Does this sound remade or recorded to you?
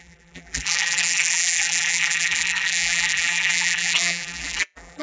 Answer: remade